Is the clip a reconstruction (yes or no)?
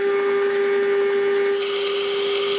no